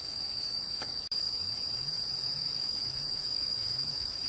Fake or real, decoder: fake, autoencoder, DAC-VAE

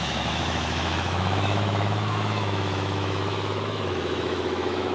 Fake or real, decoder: fake, autoencoder, DAC-VAE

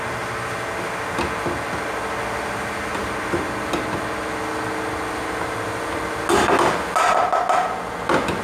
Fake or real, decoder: real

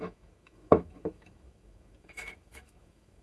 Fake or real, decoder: fake, autoencoder, DAC-VAE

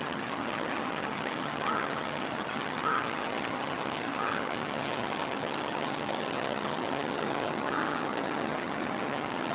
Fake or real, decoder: fake, vocoder, HiFi-GAN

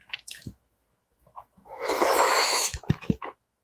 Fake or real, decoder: fake, autoencoder, DAC-VAE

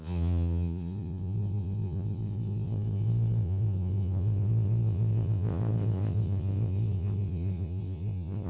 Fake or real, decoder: fake, vocoder, Vocos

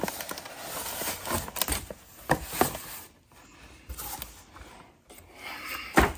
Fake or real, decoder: real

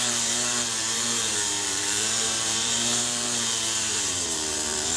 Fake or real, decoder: fake, vocoder, BigVGAN v2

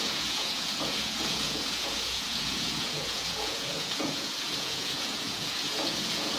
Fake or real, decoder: fake, vocoder, Vocos